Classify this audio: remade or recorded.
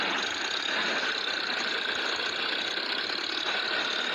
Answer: recorded